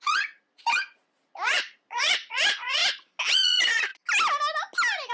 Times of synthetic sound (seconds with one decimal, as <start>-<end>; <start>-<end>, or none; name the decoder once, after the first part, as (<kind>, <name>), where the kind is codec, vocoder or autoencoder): 0.0-2.8 (vocoder, Vocos); 3.3-3.9